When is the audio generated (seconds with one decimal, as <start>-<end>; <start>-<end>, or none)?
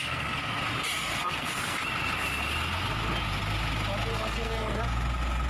0.0-0.6; 1.0-1.8; 4.1-4.8